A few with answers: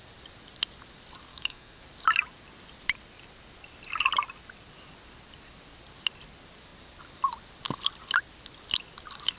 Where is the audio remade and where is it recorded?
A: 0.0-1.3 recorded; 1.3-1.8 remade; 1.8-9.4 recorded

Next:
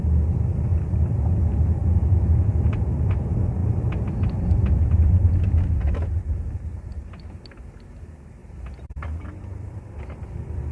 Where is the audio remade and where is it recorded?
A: 0.0-0.7 recorded; 0.7-1.5 remade; 1.5-8.4 recorded; 8.4-10.0 remade; 10.0-10.7 recorded

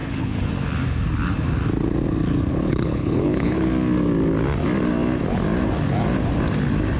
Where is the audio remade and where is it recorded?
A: 0.0-0.5 remade; 0.5-2.5 recorded; 2.5-3.7 remade; 3.7-7.0 recorded

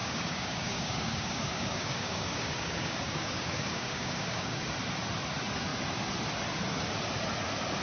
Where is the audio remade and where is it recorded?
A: 0.0-4.7 remade; 4.7-7.8 recorded